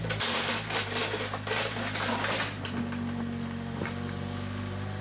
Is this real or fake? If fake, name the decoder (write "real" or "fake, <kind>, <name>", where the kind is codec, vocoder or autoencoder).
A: real